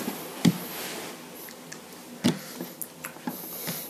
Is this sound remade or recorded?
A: recorded